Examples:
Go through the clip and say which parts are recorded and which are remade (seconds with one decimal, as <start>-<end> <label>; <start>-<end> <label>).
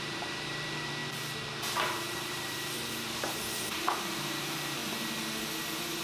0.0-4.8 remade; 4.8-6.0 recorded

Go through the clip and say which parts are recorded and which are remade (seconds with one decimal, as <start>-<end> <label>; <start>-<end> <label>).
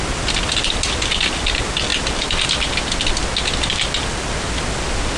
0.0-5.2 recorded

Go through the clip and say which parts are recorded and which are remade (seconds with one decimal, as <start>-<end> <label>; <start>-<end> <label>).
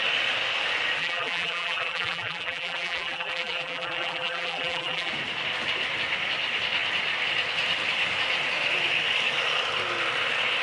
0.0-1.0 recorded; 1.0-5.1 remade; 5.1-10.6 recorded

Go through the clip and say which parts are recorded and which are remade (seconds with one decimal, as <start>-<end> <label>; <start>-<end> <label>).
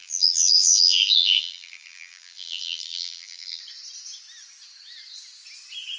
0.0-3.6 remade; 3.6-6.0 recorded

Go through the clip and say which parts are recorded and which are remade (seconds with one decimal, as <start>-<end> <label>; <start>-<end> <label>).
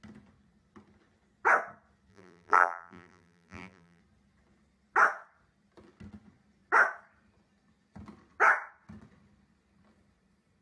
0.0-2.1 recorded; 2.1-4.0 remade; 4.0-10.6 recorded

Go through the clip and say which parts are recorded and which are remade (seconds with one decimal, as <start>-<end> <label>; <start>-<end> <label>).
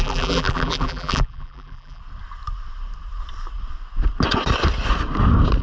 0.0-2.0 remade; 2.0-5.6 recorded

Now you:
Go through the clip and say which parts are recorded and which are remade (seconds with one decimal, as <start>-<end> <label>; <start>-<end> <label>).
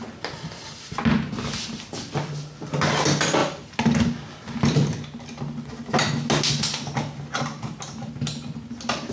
0.0-9.1 recorded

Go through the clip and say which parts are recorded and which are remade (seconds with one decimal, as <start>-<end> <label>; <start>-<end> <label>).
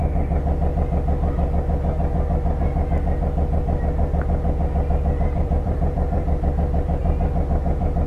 0.0-4.9 recorded; 4.9-7.0 remade; 7.0-7.5 recorded; 7.5-8.1 remade